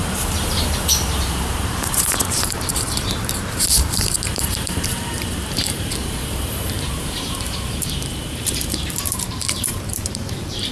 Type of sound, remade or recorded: remade